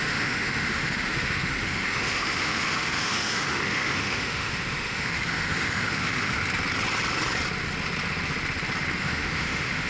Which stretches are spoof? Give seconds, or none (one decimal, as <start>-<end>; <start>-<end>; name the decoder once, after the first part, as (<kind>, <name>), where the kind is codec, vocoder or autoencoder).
0.0-6.4 (autoencoder, DAC-VAE); 9.0-9.9